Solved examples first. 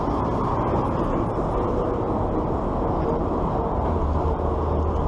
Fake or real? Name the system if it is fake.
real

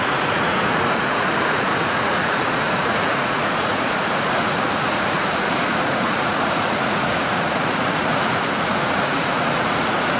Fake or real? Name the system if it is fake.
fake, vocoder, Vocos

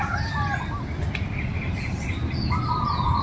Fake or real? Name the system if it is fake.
real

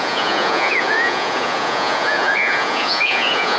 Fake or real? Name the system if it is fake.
fake, vocoder, Vocos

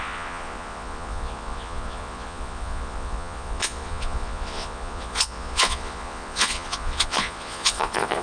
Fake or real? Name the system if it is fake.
fake, vocoder, Vocos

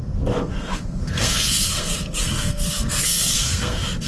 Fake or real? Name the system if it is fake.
fake, codec, SNAC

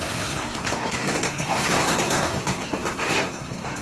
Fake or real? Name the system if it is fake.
fake, codec, SNAC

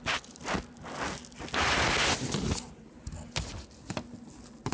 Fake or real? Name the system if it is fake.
real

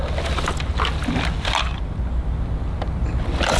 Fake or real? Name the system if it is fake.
real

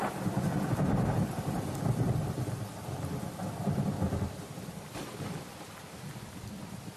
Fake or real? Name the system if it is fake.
real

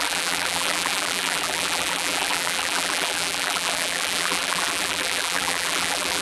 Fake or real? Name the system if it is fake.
fake, vocoder, BigVGAN v2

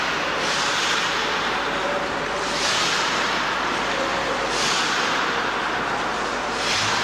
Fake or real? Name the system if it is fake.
fake, vocoder, BigVGAN v2